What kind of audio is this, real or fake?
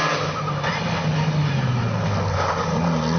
real